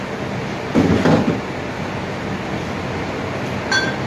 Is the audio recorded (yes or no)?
yes